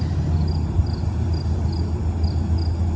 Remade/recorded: recorded